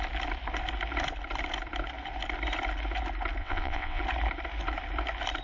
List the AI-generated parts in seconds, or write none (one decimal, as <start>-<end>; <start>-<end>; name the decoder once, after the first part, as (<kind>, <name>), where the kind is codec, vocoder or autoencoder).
3.4-4.0 (vocoder, WaveNeXt)